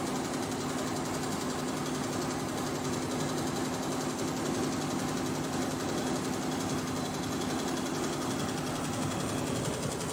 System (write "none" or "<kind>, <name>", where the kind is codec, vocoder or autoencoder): none